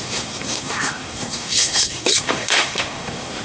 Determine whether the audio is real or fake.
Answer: fake